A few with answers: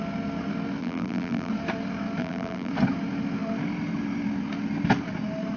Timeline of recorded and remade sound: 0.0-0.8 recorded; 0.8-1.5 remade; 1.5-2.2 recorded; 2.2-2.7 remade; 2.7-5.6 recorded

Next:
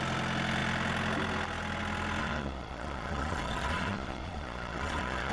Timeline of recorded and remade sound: 0.0-2.2 recorded; 2.2-5.3 remade

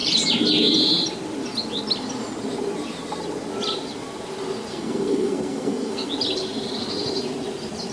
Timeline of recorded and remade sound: 0.0-4.7 recorded; 4.7-6.1 remade; 6.1-7.9 recorded

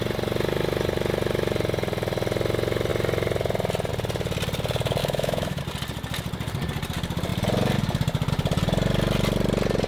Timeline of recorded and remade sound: 0.0-5.0 recorded; 5.0-5.6 remade; 5.6-9.9 recorded